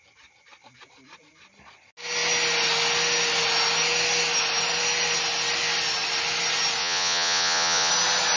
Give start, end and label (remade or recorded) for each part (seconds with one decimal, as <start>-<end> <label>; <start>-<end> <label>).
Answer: 0.0-6.8 recorded; 6.8-7.9 remade; 7.9-8.4 recorded